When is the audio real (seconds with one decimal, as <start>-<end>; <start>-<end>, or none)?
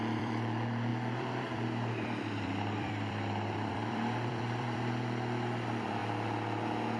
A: 6.0-7.0